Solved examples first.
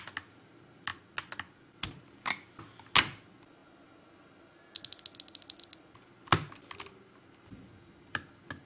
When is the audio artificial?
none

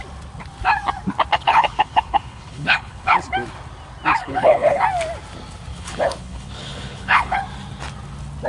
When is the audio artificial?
1.3-3.2; 4.2-4.8; 5.7-7.4

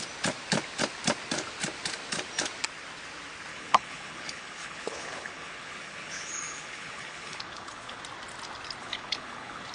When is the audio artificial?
3.5-8.0; 8.8-9.7

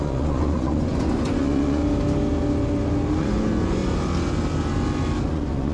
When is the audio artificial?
0.0-1.8; 3.2-3.8; 5.3-5.7

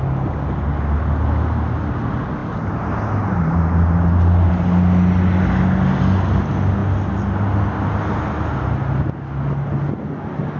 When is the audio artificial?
none

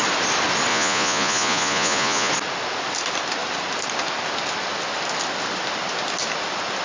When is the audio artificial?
0.7-2.3